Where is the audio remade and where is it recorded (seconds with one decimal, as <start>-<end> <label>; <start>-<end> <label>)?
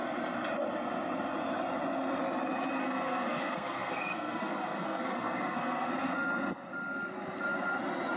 0.0-2.8 recorded; 2.8-5.9 remade; 5.9-8.2 recorded